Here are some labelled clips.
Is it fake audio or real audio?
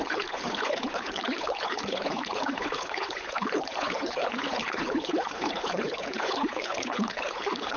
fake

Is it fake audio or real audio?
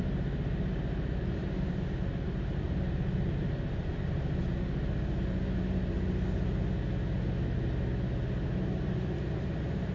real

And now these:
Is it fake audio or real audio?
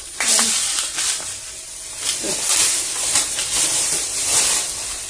real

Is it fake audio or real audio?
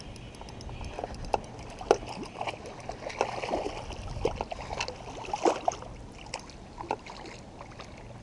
real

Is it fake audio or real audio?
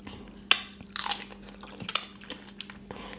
real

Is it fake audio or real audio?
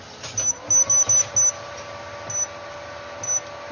real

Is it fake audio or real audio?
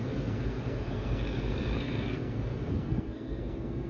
fake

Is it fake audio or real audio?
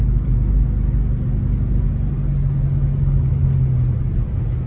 real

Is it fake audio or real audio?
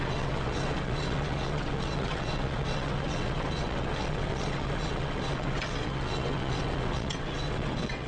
fake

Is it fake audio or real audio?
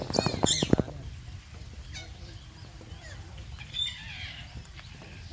fake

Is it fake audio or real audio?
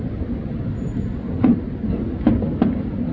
real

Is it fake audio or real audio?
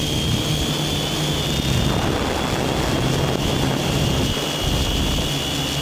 real